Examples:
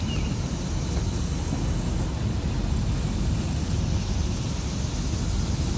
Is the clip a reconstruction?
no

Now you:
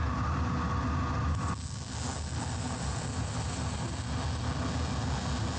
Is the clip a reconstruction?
no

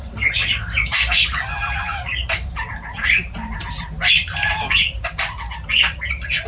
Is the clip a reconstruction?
yes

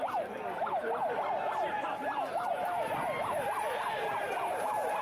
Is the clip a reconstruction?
yes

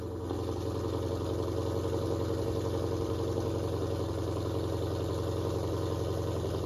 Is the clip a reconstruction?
no